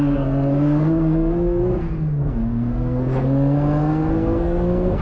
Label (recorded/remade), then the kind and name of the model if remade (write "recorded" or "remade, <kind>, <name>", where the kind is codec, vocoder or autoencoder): remade, codec, SNAC